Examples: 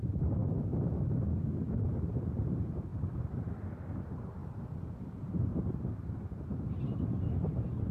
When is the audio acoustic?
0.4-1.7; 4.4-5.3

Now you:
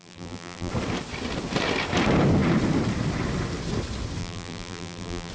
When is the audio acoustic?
0.7-4.2